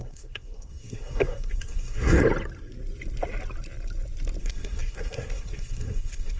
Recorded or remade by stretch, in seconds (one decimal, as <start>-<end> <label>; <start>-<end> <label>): 0.0-2.2 remade; 2.2-4.4 recorded; 4.4-6.4 remade